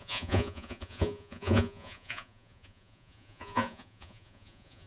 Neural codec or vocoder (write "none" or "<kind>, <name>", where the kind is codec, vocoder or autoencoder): vocoder, Vocos